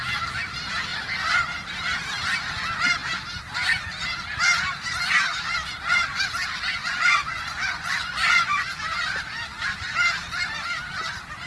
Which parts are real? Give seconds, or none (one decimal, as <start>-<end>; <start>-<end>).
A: 0.0-6.8; 9.0-11.5